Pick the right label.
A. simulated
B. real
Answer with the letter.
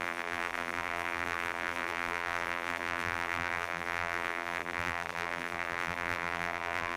A